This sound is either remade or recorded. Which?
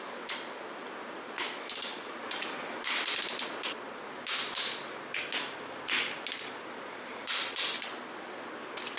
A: recorded